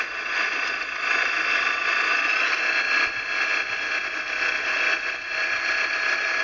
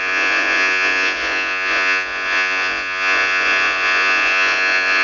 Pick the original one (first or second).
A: first